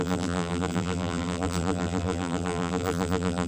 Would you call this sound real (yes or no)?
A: no